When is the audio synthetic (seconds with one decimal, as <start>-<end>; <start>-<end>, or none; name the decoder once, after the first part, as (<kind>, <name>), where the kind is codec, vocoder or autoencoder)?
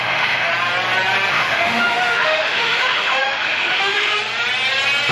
0.0-0.5 (autoencoder, DAC-VAE); 1.3-4.1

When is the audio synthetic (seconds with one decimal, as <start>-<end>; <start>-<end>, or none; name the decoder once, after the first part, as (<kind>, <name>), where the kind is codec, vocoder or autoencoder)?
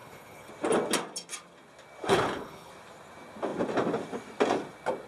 0.0-0.5 (codec, HILCodec); 2.1-2.7